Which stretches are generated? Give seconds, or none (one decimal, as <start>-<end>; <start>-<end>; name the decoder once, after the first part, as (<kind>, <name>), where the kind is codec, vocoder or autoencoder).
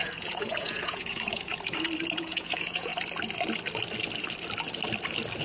0.0-1.5 (vocoder, Vocos); 2.2-2.9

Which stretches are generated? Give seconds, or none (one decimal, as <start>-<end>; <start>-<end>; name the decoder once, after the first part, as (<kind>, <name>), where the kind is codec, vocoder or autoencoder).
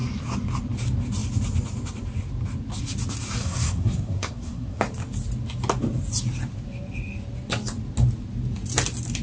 3.4-4.8 (codec, SNAC)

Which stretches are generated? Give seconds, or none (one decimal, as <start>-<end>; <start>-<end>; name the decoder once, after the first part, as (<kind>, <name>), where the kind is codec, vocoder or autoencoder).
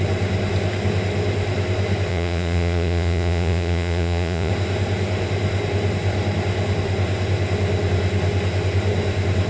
2.1-4.5 (vocoder, Vocos)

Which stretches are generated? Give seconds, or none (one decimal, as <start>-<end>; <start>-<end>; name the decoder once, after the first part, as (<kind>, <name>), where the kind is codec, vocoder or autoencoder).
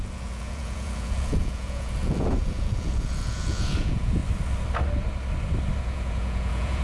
0.0-4.2 (vocoder, Vocos); 5.8-6.8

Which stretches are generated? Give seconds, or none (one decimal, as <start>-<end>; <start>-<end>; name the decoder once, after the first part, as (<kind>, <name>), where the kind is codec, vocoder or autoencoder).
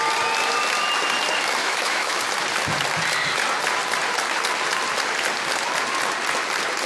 1.6-2.2 (autoencoder, DAC-VAE)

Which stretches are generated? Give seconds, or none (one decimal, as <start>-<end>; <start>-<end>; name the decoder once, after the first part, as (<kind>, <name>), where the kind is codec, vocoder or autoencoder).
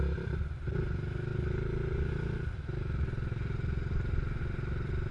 none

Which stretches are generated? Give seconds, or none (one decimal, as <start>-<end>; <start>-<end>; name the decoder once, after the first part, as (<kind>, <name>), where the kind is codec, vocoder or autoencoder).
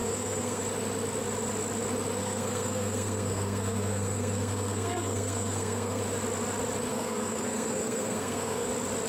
0.0-0.6 (codec, SNAC); 2.2-6.0; 6.9-8.7